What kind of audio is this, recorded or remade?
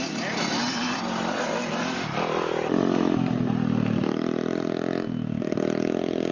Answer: recorded